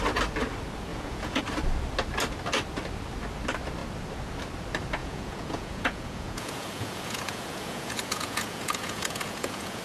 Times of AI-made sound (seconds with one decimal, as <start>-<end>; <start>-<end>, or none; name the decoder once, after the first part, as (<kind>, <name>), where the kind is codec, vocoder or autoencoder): 0.9-1.4 (vocoder, Vocos); 5.0-9.8